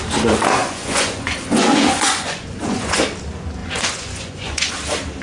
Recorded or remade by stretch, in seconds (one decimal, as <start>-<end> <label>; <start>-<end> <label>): 0.0-0.6 recorded; 0.6-3.0 remade; 3.0-3.6 recorded; 3.6-4.7 remade; 4.7-5.2 recorded